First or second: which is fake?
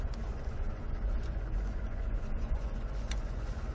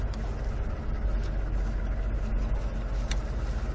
first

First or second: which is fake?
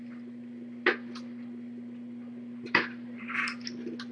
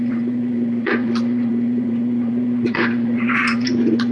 second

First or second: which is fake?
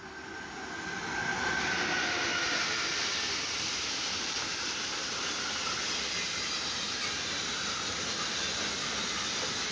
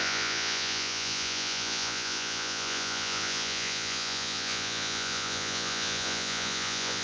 second